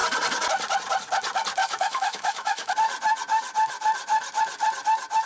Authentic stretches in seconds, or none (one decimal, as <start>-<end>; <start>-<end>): 0.0-1.6; 2.7-5.3